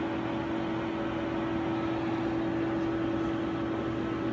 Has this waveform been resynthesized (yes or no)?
no